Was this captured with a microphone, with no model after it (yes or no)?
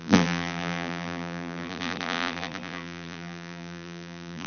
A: no